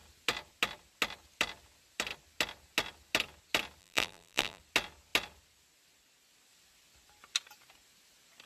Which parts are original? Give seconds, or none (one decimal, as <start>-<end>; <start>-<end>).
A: 0.0-3.8; 4.6-8.5